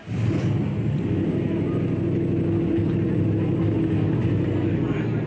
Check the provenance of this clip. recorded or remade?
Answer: recorded